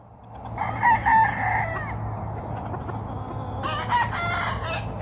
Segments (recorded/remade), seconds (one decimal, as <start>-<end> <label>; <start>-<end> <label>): 0.0-5.0 recorded

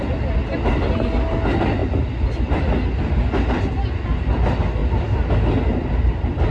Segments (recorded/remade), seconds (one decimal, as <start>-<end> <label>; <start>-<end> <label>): 0.0-6.5 recorded